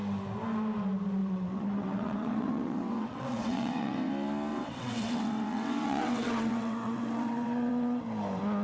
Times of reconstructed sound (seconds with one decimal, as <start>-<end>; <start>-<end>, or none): 1.2-4.1; 4.5-8.0